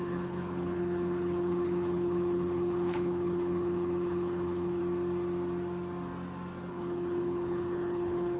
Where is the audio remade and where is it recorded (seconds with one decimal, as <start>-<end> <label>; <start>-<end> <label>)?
0.0-4.8 remade; 4.8-6.7 recorded; 6.7-8.4 remade